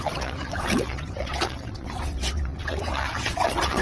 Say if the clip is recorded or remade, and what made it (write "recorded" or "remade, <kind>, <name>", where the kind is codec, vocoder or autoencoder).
remade, vocoder, WaveNeXt